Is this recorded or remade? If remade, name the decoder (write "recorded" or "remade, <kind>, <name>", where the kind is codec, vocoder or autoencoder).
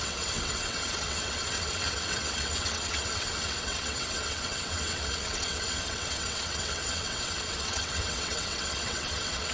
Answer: remade, vocoder, WaveNeXt